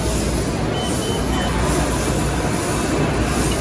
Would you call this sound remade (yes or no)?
no